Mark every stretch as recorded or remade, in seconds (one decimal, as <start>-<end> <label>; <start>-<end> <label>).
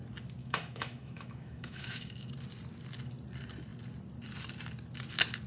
0.0-0.4 recorded; 0.4-2.3 remade; 2.3-5.5 recorded